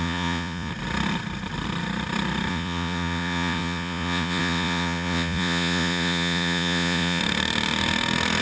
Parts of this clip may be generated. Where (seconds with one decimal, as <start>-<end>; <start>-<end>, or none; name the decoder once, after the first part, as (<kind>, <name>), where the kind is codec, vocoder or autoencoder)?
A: 0.0-0.7 (vocoder, Vocos); 2.5-7.2